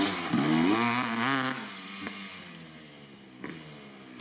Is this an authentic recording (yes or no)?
yes